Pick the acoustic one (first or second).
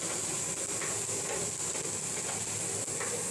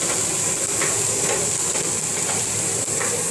first